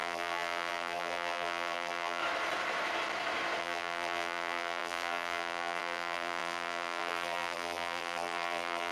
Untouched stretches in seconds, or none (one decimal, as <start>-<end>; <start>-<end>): 2.2-3.6